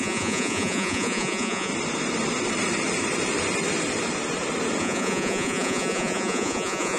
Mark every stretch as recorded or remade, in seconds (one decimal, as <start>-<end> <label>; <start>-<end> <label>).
0.0-1.7 remade; 1.7-4.8 recorded; 4.8-7.0 remade